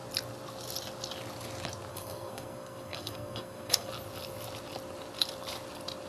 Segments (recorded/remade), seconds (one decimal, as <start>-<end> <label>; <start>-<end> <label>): 0.0-1.9 recorded; 1.9-3.9 remade; 3.9-6.1 recorded